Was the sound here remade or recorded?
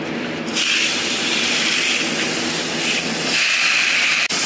recorded